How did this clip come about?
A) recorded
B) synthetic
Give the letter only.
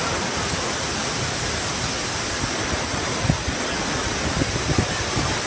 A